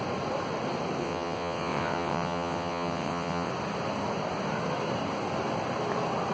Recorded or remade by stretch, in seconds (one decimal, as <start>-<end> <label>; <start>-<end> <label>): 0.0-1.0 recorded; 1.0-3.5 remade; 3.5-6.3 recorded